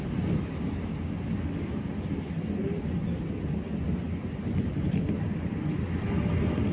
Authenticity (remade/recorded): recorded